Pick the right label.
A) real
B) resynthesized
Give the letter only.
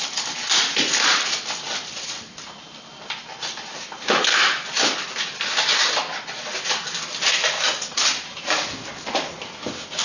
A